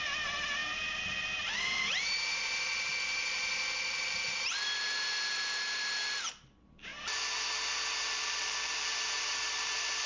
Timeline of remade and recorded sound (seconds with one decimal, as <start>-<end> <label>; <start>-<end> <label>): 0.0-6.9 remade; 6.9-8.1 recorded; 8.1-10.1 remade